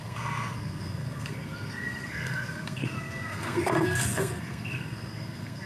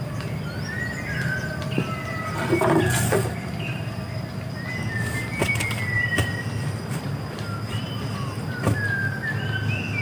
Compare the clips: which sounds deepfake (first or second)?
first